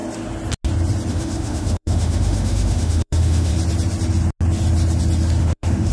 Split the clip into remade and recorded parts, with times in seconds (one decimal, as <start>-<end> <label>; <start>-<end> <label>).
0.0-1.1 recorded; 1.1-3.5 remade; 3.5-5.4 recorded; 5.4-5.9 remade